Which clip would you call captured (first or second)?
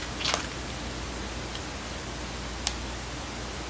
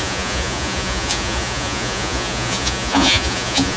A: first